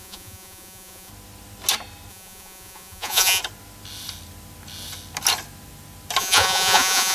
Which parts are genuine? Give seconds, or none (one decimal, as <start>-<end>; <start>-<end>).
1.1-2.1; 3.4-6.2